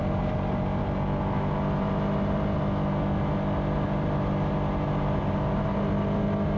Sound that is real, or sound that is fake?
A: real